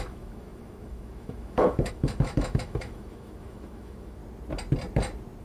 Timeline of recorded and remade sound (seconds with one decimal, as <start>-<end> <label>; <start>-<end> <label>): 0.0-4.2 remade; 4.2-5.4 recorded